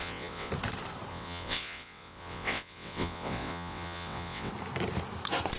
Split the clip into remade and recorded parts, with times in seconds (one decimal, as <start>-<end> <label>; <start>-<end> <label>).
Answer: 0.0-0.5 remade; 0.5-1.1 recorded; 1.1-4.5 remade; 4.5-5.6 recorded